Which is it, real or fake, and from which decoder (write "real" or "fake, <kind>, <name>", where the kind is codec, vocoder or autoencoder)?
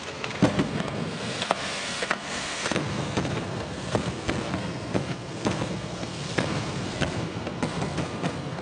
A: fake, codec, SNAC